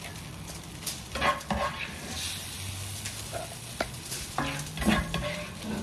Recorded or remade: recorded